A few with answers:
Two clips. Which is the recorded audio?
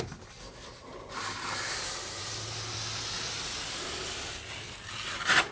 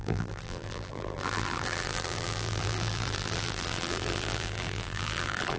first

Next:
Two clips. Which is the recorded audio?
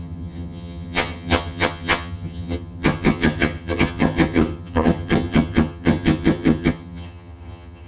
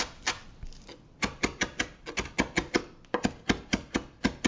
second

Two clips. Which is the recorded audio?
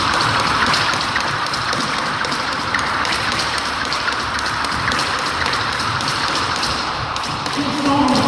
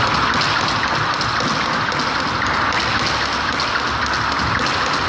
second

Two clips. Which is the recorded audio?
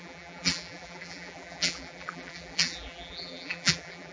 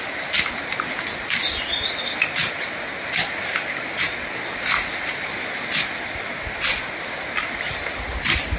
second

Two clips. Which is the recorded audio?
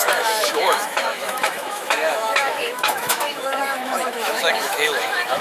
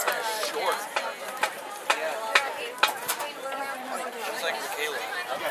second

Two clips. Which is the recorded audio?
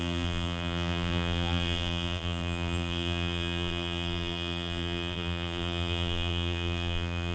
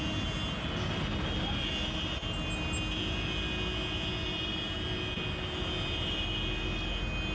second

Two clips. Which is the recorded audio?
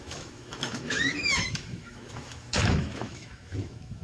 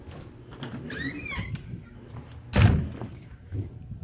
second